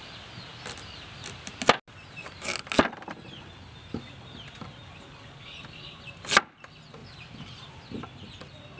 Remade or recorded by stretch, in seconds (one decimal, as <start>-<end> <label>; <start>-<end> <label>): 0.0-8.8 recorded